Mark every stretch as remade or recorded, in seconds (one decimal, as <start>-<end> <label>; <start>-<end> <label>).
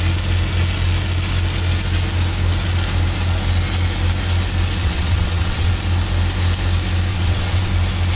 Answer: 0.0-4.8 recorded; 4.8-5.7 remade; 5.7-7.1 recorded; 7.1-7.7 remade; 7.7-8.2 recorded